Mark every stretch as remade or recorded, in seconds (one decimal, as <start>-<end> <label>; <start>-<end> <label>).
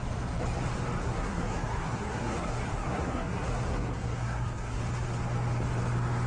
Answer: 0.0-1.0 recorded; 1.0-4.8 remade; 4.8-6.3 recorded